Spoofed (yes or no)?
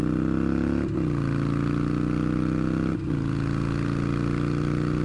no